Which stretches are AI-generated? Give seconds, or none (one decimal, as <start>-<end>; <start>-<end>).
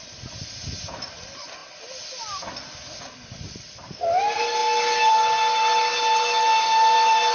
none